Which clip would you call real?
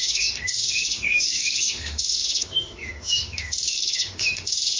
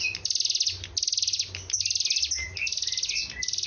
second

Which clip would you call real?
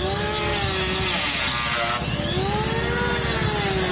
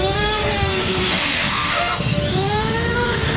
first